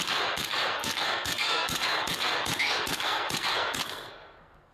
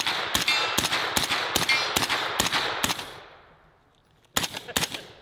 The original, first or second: second